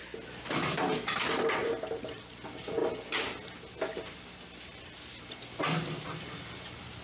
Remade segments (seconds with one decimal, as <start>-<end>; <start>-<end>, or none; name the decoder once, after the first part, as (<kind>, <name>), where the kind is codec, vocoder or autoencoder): 1.6-2.2 (vocoder, BigVGAN v2)